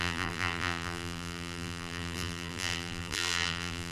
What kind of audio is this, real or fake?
fake